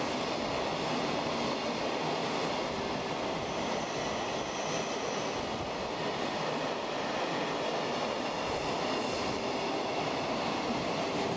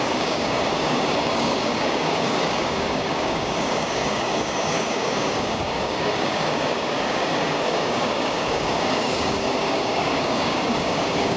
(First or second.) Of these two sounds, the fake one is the second